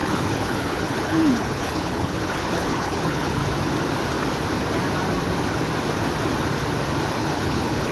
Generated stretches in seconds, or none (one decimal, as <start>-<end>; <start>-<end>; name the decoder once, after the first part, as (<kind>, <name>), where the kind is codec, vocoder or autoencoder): 0.0-3.4 (codec, HILCodec); 7.1-7.9